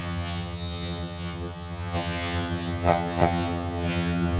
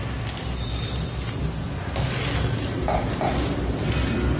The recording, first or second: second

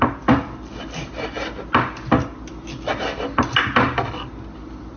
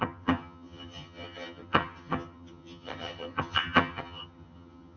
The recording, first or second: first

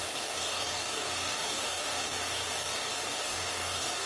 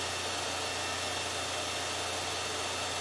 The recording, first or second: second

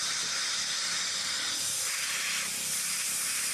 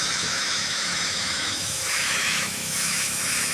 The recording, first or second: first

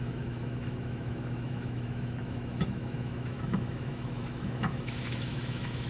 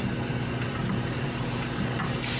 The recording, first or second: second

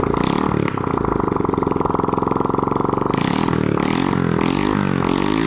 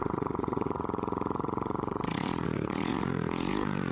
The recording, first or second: first